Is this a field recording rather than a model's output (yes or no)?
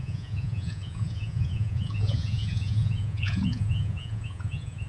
no